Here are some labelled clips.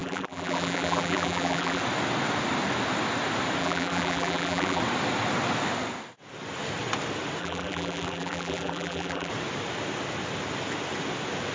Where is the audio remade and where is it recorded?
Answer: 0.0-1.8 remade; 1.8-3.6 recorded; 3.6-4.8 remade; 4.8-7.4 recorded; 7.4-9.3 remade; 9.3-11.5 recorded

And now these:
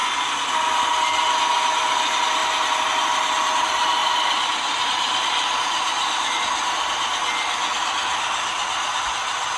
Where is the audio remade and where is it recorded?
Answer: 0.0-0.8 remade; 0.8-4.0 recorded; 4.0-6.9 remade; 6.9-9.6 recorded

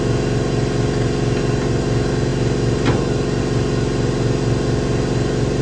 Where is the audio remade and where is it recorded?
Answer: 0.0-5.6 recorded

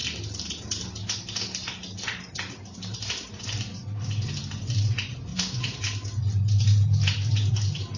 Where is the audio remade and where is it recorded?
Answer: 0.0-3.3 remade; 3.3-8.0 recorded

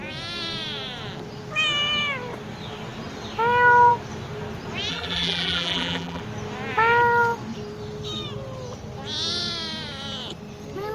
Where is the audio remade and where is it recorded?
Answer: 0.0-4.9 recorded; 4.9-6.2 remade; 6.2-10.9 recorded

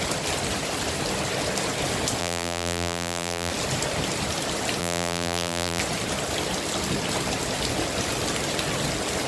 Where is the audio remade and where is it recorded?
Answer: 0.0-2.2 recorded; 2.2-3.5 remade; 3.5-4.8 recorded; 4.8-5.8 remade; 5.8-9.3 recorded

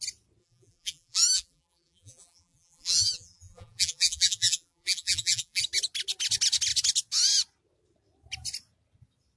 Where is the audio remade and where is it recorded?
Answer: 0.0-0.4 recorded; 0.4-5.6 remade; 5.6-9.4 recorded